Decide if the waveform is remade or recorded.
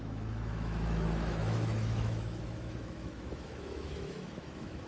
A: remade